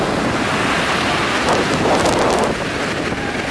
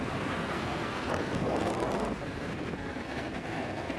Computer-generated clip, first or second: second